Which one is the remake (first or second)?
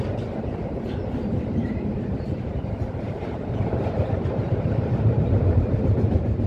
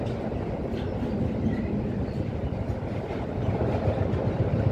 first